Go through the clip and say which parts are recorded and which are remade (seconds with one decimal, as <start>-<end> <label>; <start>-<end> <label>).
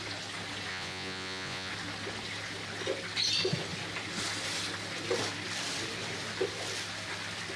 0.0-0.7 recorded; 0.7-1.7 remade; 1.7-7.6 recorded